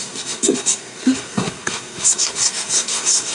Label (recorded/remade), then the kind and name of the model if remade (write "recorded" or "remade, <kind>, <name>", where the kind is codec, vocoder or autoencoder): remade, codec, SNAC